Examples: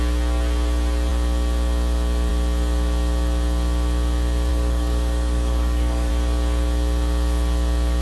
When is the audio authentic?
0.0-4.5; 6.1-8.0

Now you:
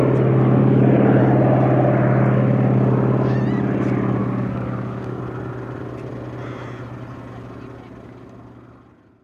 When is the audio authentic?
0.0-0.6; 1.2-4.2; 5.2-9.2

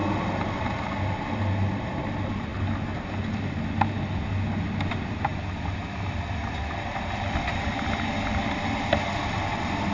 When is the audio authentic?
0.0-9.9

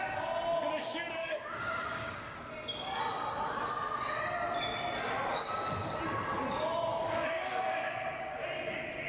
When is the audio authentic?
0.0-1.2; 2.4-6.9; 8.4-9.1

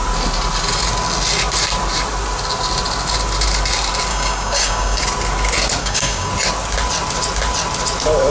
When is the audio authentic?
0.0-4.1; 5.0-5.8; 6.3-8.3

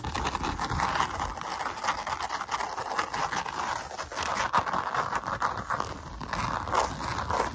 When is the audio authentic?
0.0-7.5

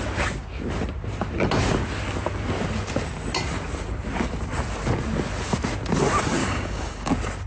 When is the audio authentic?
0.0-6.4; 7.1-7.5

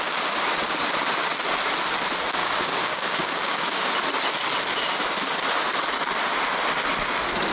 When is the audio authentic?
0.0-2.4; 3.9-7.5